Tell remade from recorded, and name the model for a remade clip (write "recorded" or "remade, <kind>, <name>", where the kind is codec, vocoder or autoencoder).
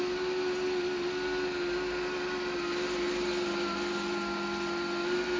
recorded